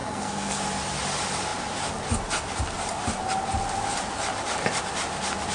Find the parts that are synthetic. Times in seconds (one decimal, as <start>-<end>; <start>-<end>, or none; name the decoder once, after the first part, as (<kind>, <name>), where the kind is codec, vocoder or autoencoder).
0.0-0.6 (codec, SNAC)